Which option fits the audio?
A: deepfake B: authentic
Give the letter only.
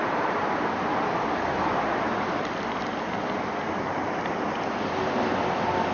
B